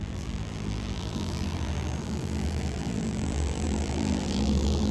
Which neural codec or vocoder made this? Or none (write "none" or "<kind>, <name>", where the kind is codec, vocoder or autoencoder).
vocoder, BigVGAN v2